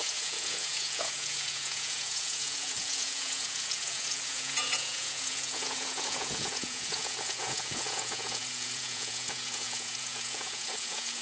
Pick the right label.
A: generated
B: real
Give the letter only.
A